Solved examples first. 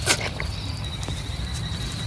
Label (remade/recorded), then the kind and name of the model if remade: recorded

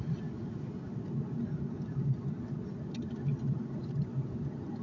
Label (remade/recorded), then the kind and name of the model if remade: recorded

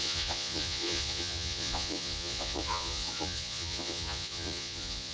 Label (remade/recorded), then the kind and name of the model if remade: remade, vocoder, Vocos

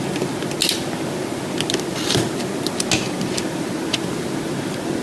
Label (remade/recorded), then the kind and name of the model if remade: recorded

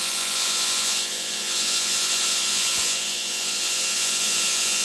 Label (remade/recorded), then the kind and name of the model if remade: remade, vocoder, Vocos